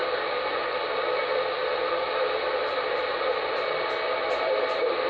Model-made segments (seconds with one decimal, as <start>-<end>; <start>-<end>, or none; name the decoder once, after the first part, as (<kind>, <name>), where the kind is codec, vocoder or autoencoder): none